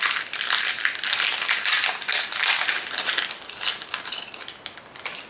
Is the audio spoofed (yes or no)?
no